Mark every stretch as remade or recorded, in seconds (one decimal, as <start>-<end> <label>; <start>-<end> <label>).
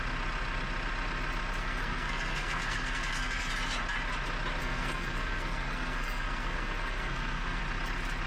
0.0-1.6 recorded; 1.6-3.5 remade; 3.5-4.6 recorded; 4.6-7.6 remade; 7.6-8.3 recorded